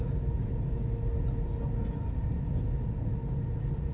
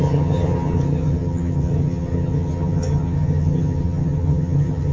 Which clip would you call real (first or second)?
first